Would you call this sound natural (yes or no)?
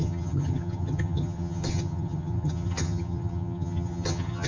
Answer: no